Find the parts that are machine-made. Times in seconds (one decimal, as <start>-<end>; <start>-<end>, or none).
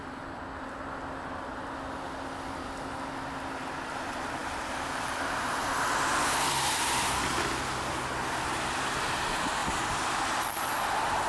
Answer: 4.4-7.2; 9.6-10.8